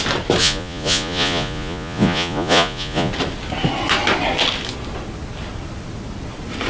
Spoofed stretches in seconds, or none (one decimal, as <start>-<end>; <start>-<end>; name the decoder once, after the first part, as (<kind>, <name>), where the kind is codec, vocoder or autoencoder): 0.4-3.1 (vocoder, Vocos)